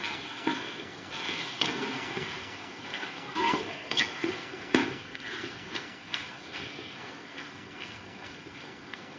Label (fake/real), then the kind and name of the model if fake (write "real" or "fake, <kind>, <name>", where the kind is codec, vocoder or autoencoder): fake, codec, SNAC